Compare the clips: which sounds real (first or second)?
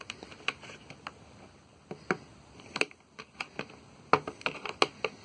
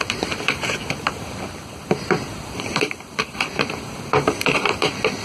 first